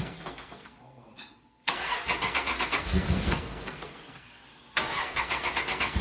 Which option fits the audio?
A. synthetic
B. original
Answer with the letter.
A